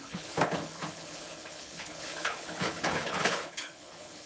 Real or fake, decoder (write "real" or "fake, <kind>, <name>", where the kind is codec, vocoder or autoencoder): fake, codec, HILCodec